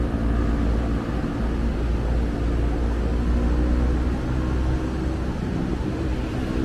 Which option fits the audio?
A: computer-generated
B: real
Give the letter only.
B